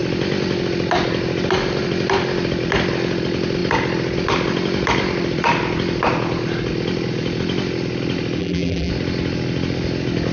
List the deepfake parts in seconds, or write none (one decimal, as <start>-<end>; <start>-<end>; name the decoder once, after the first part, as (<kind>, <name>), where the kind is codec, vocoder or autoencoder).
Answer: 8.4-8.9 (vocoder, BigVGAN v2)